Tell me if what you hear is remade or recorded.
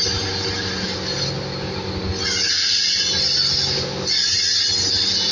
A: recorded